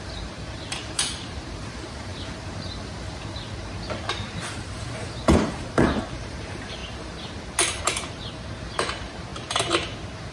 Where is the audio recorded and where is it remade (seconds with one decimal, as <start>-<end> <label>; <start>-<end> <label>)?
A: 0.0-6.8 remade; 6.8-7.8 recorded; 7.8-9.3 remade; 9.3-10.3 recorded